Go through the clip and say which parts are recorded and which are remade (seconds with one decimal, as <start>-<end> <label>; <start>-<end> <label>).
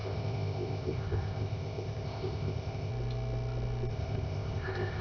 0.0-2.9 remade; 2.9-3.9 recorded; 3.9-5.0 remade